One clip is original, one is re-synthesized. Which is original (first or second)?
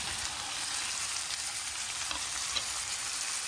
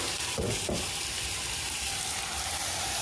second